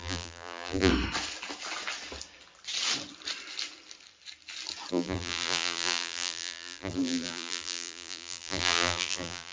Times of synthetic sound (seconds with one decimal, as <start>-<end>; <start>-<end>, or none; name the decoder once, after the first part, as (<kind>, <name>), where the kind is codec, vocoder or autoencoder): 0.0-0.9 (vocoder, BigVGAN v2); 4.9-9.5